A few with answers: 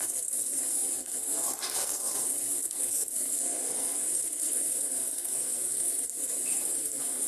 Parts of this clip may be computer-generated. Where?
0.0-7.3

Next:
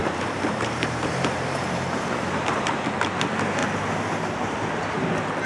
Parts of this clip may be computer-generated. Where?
0.0-2.7

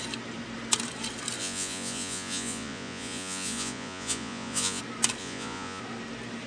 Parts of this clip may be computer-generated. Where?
1.4-4.8; 5.2-5.8

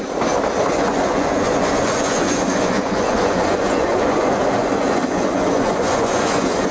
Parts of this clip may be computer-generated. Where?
0.7-6.7

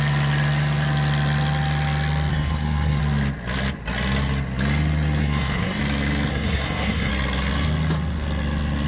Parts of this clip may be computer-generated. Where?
2.3-3.0; 5.2-5.8; 6.3-7.1

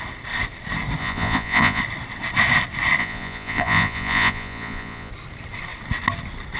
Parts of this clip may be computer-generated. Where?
1.0-1.8; 3.0-5.1

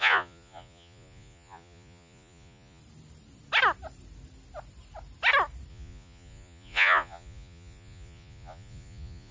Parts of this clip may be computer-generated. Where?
0.0-2.8; 5.7-9.3

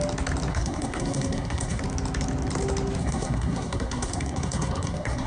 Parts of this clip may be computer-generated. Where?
0.5-1.8; 3.0-5.3